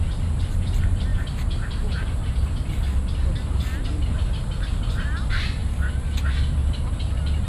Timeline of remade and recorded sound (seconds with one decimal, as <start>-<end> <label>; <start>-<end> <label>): 0.0-7.5 recorded